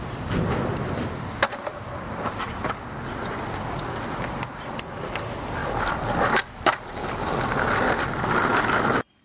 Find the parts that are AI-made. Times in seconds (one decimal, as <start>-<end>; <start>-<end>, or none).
1.7-2.7; 5.6-7.2